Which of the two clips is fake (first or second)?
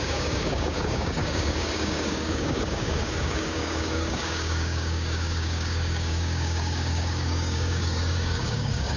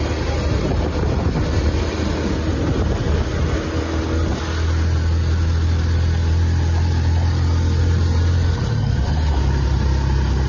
first